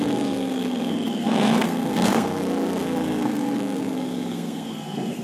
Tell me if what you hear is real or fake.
fake